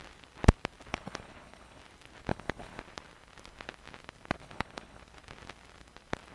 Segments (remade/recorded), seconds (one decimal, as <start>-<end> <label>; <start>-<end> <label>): 0.0-0.9 recorded; 0.9-1.8 remade; 1.8-2.3 recorded; 2.3-2.8 remade; 2.8-4.4 recorded; 4.4-5.0 remade; 5.0-6.3 recorded